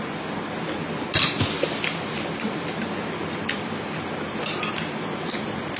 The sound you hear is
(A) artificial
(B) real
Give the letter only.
B